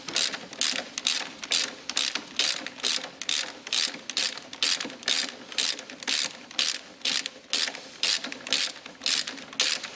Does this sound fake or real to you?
real